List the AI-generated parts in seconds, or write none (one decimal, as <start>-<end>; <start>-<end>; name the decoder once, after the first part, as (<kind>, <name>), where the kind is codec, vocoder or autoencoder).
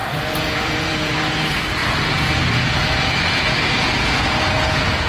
0.0-1.1 (vocoder, Vocos); 1.8-5.1